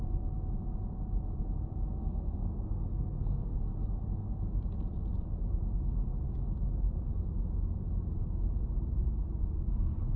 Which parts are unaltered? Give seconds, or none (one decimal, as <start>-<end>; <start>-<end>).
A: 0.0-2.0; 3.6-10.2

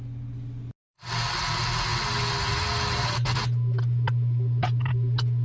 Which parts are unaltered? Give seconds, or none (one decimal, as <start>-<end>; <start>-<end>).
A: 0.0-5.4

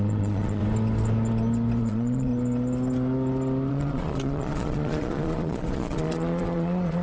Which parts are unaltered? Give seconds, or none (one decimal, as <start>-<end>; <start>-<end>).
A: 0.6-1.8; 2.3-3.7

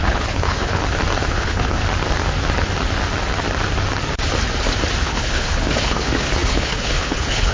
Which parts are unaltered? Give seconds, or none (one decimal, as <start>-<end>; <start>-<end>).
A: 0.8-1.3; 1.8-5.0

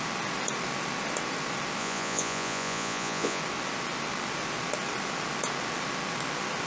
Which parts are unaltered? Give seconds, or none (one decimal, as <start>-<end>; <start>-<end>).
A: 0.0-1.8; 3.4-6.7